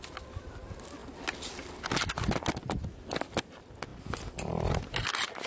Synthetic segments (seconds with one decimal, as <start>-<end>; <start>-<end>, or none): none